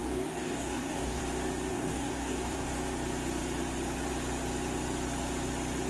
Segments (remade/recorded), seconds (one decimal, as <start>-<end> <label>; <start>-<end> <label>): 0.0-1.2 remade; 1.2-1.7 recorded; 1.7-2.7 remade; 2.7-5.9 recorded